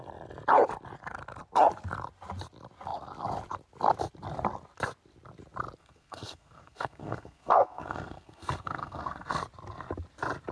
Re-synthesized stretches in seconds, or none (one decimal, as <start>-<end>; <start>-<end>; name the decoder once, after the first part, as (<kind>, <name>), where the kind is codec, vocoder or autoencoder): 5.8-9.4 (codec, SNAC)

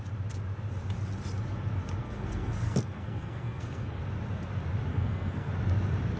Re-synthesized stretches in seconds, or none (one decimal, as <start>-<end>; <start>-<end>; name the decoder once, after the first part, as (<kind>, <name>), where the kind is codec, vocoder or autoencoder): 2.0-4.0 (codec, SNAC); 4.9-5.5

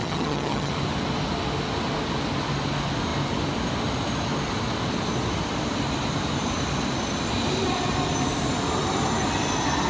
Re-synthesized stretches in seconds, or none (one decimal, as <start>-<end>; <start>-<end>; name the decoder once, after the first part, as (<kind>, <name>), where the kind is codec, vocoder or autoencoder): 0.0-0.7 (vocoder, HiFi-GAN)

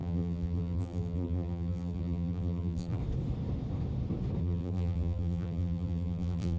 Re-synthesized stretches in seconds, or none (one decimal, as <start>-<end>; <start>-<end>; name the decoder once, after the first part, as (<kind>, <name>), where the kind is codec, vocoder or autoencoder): 0.0-3.0 (vocoder, BigVGAN v2); 4.4-6.6